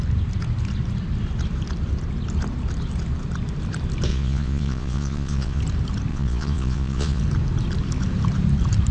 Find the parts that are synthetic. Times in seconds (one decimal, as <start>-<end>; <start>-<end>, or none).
4.1-5.6; 6.1-7.2